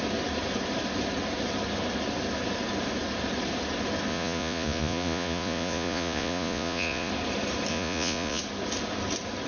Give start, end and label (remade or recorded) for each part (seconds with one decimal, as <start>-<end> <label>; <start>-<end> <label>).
0.0-4.1 recorded; 4.1-7.1 remade; 7.1-7.7 recorded; 7.7-8.4 remade; 8.4-9.5 recorded